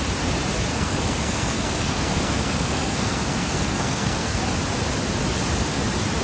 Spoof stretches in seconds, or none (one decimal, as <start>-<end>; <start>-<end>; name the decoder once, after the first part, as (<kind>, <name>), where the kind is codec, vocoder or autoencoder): 0.7-4.4 (codec, SNAC)